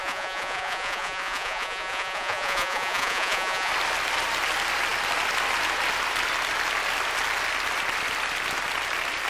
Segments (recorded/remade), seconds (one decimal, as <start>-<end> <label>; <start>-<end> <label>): 0.0-3.7 remade; 3.7-9.3 recorded